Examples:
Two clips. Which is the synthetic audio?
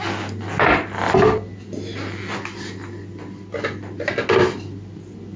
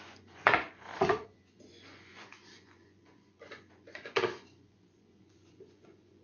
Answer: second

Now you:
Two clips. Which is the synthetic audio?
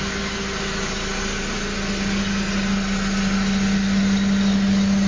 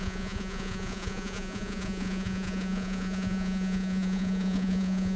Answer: second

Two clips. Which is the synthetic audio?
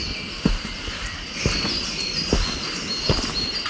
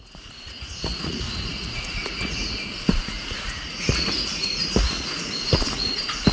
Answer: second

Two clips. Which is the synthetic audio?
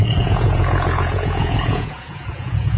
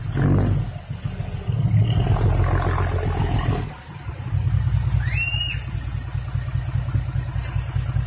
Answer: first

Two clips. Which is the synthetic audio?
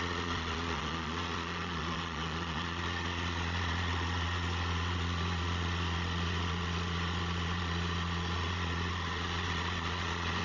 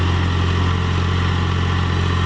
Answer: first